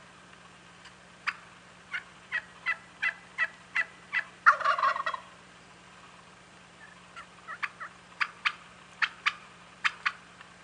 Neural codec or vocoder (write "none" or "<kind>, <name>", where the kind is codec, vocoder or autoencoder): vocoder, BigVGAN v2